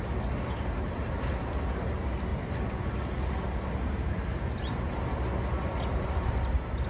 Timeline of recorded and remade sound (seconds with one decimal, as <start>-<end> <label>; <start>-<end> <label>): 0.0-6.9 recorded